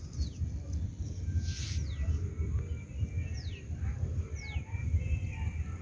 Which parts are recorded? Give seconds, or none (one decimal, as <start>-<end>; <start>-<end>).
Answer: 0.0-5.8